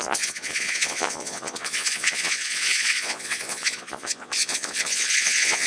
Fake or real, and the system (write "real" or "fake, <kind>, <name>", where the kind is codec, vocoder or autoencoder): fake, vocoder, Vocos